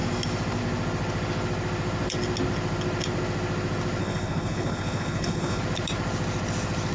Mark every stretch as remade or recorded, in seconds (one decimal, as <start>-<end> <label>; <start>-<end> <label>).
0.0-4.0 recorded; 4.0-5.6 remade; 5.6-6.9 recorded